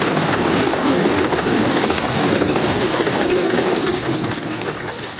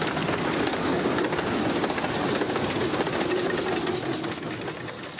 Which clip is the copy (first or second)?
first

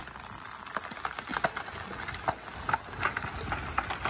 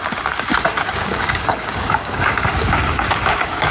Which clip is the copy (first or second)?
second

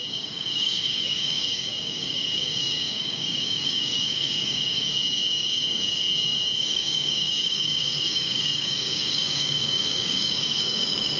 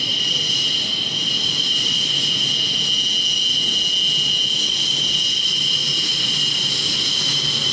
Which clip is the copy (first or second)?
first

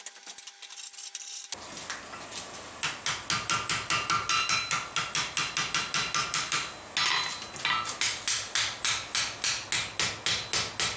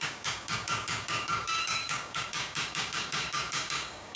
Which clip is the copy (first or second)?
second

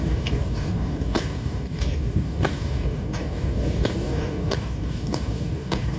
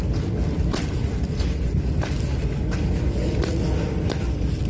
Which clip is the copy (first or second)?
first